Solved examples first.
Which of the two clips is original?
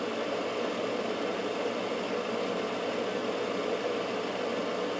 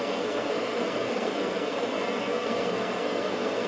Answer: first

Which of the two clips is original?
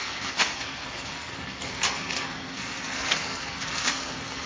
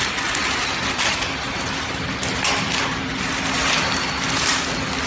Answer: second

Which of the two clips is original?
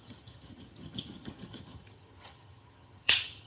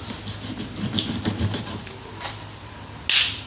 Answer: second